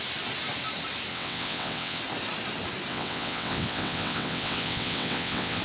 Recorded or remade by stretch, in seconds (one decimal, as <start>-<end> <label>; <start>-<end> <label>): 0.0-1.1 recorded; 1.1-2.0 remade; 2.0-2.9 recorded; 2.9-5.6 remade